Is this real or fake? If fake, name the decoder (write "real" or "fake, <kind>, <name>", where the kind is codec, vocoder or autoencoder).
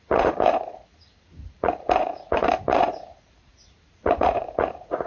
fake, vocoder, Vocos